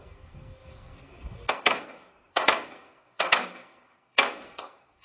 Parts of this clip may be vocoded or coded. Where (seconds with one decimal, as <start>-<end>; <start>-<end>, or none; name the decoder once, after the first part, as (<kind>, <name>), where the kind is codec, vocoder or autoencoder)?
0.0-5.0 (codec, SNAC)